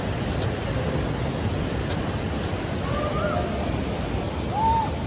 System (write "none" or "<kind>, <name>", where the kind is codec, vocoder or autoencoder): none